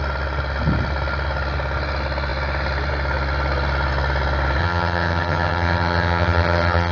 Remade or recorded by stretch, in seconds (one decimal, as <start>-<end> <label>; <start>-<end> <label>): 0.0-4.6 recorded; 4.6-6.9 remade